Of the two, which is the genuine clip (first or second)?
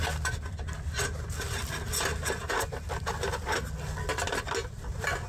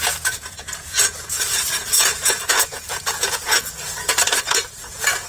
first